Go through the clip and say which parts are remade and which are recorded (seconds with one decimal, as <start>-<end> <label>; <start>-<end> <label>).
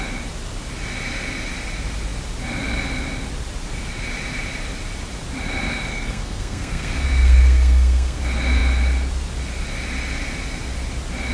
0.0-5.9 recorded; 5.9-8.2 remade; 8.2-11.3 recorded